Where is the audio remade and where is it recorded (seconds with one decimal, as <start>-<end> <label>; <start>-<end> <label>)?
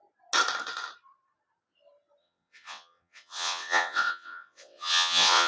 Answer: 0.0-2.2 recorded; 2.2-5.5 remade